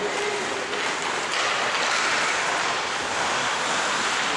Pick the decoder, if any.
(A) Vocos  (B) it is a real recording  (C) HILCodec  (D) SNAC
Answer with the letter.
B